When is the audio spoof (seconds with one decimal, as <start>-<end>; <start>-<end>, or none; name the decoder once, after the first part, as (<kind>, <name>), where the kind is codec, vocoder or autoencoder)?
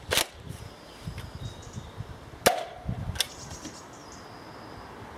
none